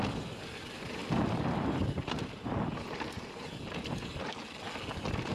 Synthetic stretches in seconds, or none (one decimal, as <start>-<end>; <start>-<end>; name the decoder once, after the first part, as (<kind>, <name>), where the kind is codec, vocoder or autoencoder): none